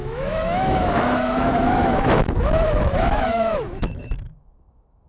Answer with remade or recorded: remade